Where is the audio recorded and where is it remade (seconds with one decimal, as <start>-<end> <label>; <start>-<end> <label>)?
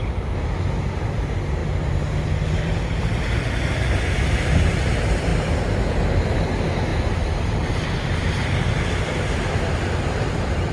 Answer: 0.0-10.7 recorded